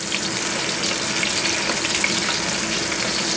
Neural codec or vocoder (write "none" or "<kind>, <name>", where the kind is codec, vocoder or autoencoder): none